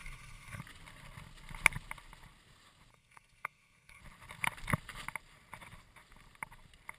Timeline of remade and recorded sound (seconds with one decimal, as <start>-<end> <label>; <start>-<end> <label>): 0.0-0.6 remade; 0.6-2.9 recorded; 2.9-4.0 remade; 4.0-7.0 recorded